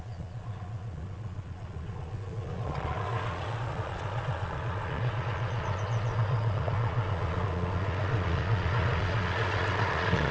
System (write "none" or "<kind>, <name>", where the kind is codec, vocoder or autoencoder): vocoder, Vocos